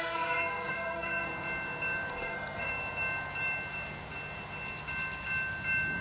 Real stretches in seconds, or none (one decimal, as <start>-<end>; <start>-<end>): 1.3-2.1; 2.7-6.0